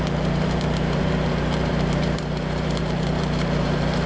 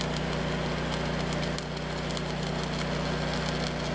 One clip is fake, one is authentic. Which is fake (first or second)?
first